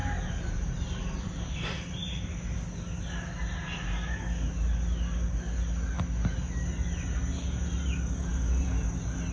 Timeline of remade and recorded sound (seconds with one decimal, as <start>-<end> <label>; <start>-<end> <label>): 0.0-1.5 remade; 1.5-8.3 recorded; 8.3-9.3 remade